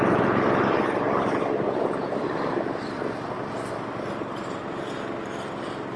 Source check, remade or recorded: recorded